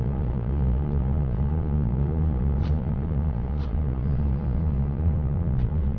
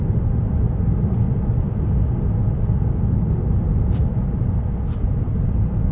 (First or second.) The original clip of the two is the second